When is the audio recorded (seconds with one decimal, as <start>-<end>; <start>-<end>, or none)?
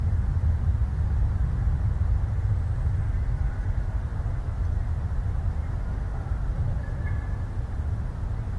0.0-8.6